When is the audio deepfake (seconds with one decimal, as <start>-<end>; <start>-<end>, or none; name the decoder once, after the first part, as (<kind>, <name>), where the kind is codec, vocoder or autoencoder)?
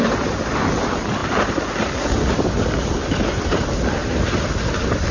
none